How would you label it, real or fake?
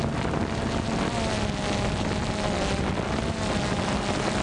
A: real